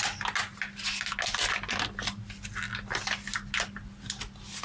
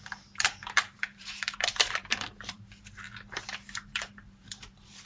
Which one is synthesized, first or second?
second